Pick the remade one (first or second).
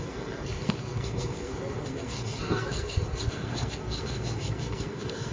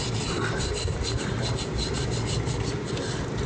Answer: first